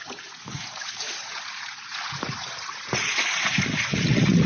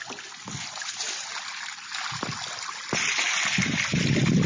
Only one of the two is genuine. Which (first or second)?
second